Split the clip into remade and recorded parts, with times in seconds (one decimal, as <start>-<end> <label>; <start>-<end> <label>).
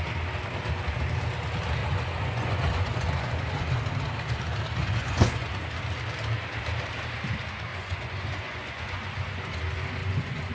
0.0-1.8 recorded; 1.8-3.8 remade; 3.8-4.8 recorded; 4.8-5.5 remade; 5.5-7.7 recorded; 7.7-9.6 remade; 9.6-10.0 recorded; 10.0-10.5 remade